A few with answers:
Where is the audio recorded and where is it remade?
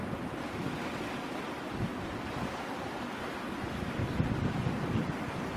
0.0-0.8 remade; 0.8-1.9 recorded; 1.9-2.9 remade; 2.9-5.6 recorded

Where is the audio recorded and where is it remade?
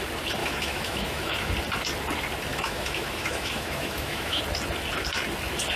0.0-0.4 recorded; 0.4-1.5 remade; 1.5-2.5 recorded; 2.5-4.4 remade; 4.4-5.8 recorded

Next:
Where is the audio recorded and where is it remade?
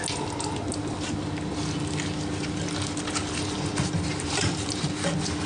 0.0-4.1 recorded; 4.1-4.7 remade; 4.7-5.5 recorded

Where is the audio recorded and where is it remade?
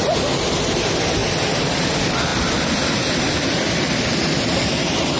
0.0-5.2 recorded